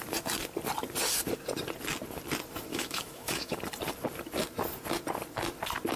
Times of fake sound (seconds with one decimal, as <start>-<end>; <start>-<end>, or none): 2.7-3.6

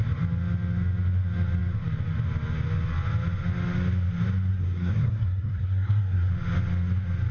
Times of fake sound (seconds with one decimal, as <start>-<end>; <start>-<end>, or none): 4.5-6.3

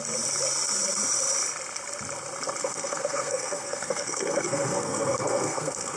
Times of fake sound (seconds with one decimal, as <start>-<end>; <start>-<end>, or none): 2.6-6.0